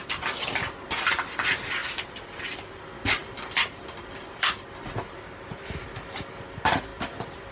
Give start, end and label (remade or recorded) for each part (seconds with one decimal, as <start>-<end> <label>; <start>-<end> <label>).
0.0-1.8 recorded; 1.8-2.8 remade; 2.8-7.5 recorded